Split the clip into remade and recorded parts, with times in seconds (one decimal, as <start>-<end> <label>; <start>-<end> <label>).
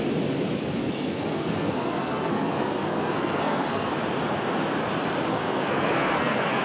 0.0-0.8 recorded; 0.8-3.9 remade; 3.9-5.3 recorded; 5.3-6.6 remade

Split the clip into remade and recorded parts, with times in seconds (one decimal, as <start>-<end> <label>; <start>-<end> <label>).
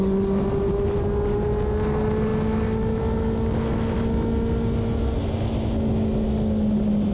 0.0-7.1 recorded